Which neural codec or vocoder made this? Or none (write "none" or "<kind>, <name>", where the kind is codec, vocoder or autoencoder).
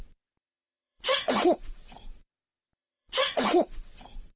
vocoder, WaveNeXt